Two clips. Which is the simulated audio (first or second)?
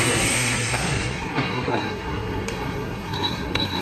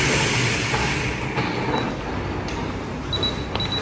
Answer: first